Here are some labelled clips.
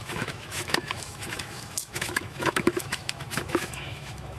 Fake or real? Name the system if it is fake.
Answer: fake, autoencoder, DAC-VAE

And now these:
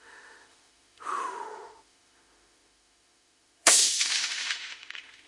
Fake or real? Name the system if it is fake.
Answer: fake, autoencoder, DAC-VAE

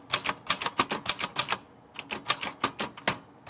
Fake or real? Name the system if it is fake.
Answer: real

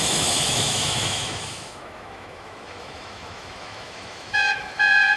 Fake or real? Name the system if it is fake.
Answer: fake, autoencoder, DAC-VAE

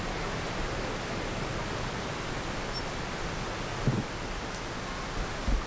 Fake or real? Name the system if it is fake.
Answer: real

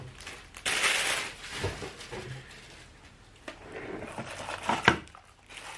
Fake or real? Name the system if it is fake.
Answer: real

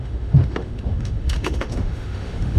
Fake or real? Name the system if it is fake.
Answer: fake, autoencoder, DAC-VAE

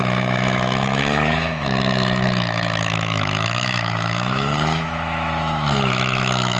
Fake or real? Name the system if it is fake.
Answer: fake, autoencoder, DAC-VAE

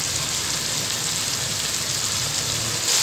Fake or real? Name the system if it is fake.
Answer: real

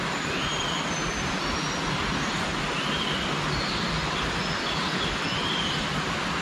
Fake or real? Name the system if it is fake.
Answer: real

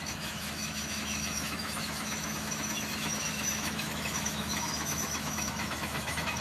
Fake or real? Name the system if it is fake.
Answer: fake, autoencoder, DAC-VAE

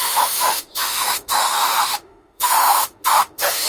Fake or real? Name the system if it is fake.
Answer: fake, autoencoder, DAC-VAE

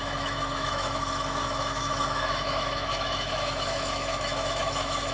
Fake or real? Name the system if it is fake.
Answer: fake, autoencoder, DAC-VAE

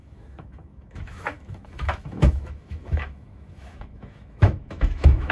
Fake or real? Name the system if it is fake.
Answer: fake, autoencoder, DAC-VAE